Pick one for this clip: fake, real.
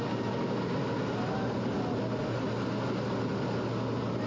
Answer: real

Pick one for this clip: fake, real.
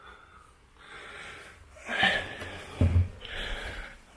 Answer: real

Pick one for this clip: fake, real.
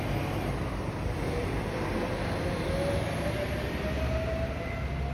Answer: real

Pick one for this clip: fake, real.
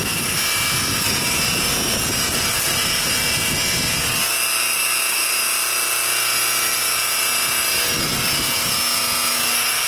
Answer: real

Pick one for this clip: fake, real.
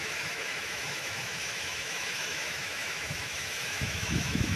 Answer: fake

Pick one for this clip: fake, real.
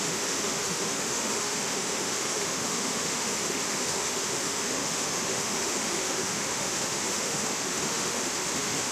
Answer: fake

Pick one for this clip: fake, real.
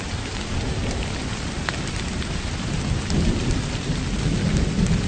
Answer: real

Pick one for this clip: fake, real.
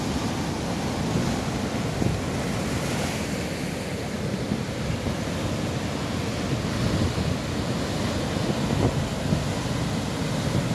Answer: real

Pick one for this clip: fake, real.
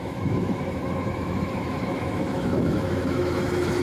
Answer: fake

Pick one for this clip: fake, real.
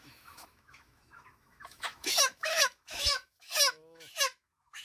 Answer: fake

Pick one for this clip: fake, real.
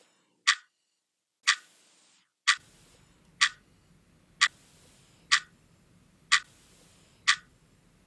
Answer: real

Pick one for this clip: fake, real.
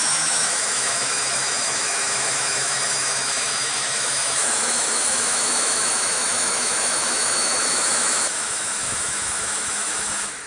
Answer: fake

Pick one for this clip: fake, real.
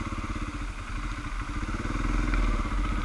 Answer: real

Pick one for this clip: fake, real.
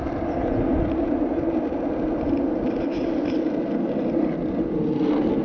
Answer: real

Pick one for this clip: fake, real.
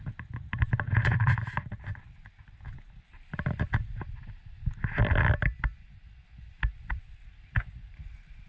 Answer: real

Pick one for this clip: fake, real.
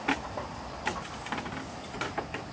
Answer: real